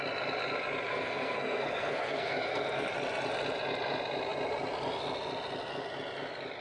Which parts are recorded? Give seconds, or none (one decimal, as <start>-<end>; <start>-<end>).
0.0-0.9; 2.9-6.6